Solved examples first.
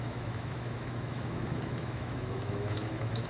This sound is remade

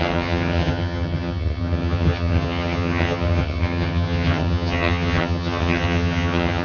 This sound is remade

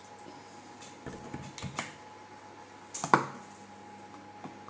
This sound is recorded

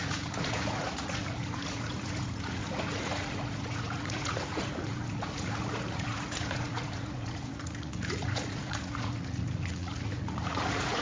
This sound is remade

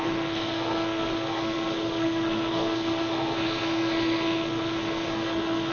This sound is remade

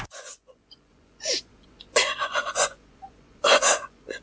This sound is remade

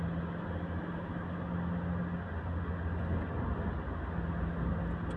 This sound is recorded